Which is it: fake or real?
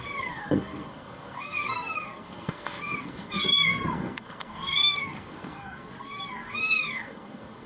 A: fake